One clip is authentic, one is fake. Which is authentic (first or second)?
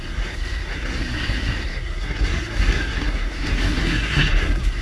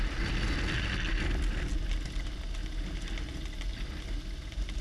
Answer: second